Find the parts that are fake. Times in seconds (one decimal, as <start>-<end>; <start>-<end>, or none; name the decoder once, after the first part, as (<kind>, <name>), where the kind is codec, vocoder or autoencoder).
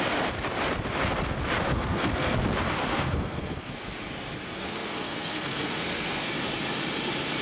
1.7-2.4 (codec, SNAC); 2.9-3.7; 4.6-6.3